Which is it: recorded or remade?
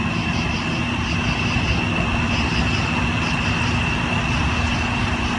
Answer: recorded